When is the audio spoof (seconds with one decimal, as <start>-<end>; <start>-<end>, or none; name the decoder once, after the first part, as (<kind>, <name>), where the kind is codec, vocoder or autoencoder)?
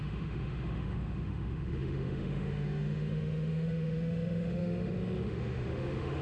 0.0-6.2 (autoencoder, DAC-VAE)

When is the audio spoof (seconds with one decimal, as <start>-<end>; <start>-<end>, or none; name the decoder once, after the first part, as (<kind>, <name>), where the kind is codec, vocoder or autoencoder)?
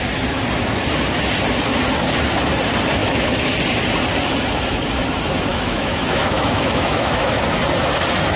3.0-3.5 (autoencoder, DAC-VAE); 5.5-7.4